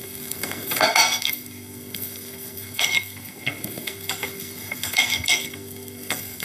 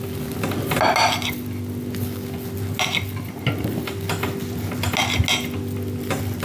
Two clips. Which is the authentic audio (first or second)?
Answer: second